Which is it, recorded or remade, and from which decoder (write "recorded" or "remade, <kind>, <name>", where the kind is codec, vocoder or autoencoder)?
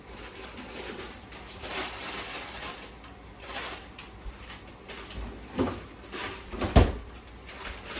recorded